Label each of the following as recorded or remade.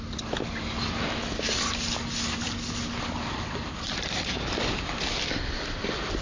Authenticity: recorded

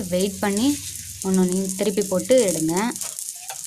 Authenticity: recorded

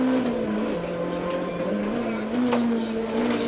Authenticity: recorded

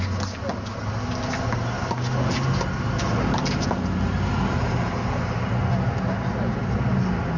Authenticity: recorded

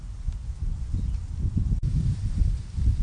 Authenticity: remade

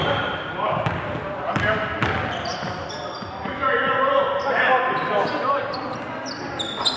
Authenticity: recorded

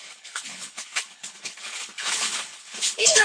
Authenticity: remade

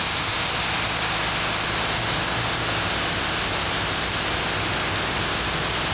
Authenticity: recorded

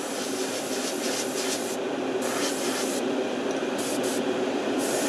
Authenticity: recorded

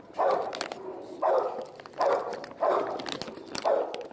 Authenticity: recorded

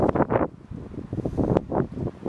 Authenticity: recorded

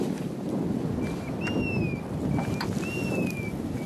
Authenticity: recorded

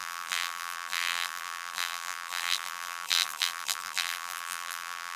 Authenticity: remade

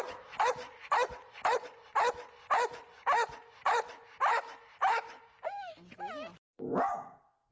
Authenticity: recorded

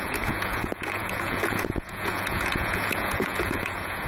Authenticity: remade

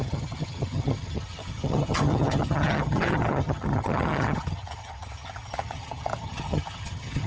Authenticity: remade